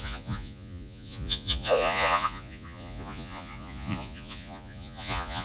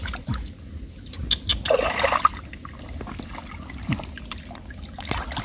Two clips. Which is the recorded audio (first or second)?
second